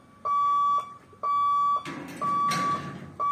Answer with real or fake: real